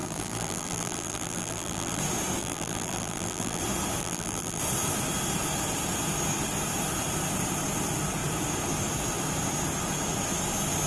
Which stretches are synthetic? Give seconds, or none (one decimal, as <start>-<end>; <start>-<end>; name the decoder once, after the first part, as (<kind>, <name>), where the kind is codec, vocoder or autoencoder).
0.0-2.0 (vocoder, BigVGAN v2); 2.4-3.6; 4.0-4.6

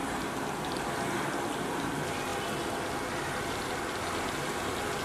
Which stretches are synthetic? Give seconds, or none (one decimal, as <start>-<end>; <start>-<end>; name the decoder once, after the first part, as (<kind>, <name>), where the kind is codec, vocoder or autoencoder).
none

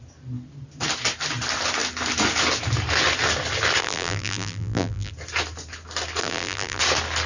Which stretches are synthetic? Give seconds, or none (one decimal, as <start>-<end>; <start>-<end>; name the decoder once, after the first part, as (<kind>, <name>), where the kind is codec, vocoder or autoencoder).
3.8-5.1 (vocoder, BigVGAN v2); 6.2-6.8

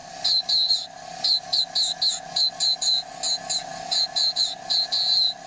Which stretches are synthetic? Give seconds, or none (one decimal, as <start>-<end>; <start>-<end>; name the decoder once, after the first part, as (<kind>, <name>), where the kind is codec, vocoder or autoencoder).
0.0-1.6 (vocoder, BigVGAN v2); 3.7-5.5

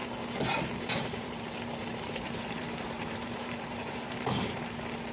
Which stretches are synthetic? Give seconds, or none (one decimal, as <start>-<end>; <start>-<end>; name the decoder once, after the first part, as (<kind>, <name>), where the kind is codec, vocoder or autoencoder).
0.0-1.4 (vocoder, BigVGAN v2); 1.8-4.6